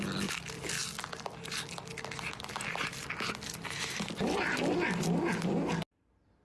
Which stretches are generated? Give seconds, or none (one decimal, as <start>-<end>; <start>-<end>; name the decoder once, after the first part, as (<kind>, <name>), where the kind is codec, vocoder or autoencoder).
none